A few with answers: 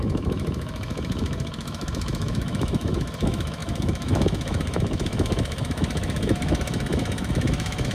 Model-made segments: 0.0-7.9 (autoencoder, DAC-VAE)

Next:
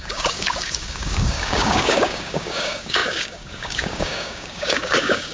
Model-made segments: 0.0-5.3 (codec, DAC)

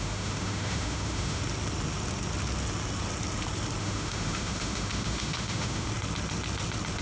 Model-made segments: 0.0-1.4 (autoencoder, DAC-VAE); 3.8-5.9

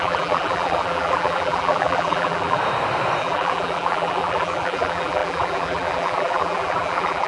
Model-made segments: 0.0-2.6 (vocoder, BigVGAN v2); 3.2-7.3

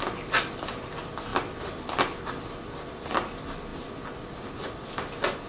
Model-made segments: none

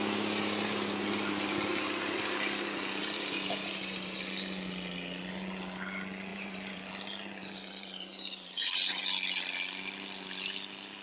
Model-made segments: 3.0-4.2 (vocoder, BigVGAN v2); 6.3-6.9; 7.4-9.0